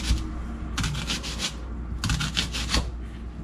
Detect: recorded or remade recorded